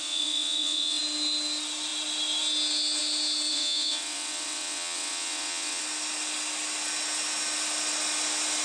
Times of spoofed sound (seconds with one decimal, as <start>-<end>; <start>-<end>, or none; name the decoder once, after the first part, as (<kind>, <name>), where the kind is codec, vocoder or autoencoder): 0.0-1.0 (vocoder, WaveNeXt); 3.5-5.8